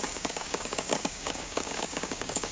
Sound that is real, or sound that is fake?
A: fake